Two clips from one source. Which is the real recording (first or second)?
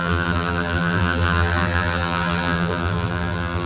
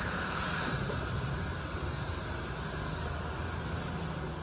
second